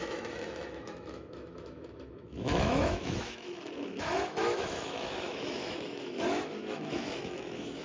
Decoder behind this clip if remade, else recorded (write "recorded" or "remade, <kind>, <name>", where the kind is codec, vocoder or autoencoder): remade, autoencoder, DAC-VAE